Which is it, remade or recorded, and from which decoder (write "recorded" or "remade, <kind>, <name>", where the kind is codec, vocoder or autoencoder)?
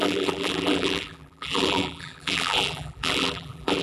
remade, vocoder, BigVGAN v2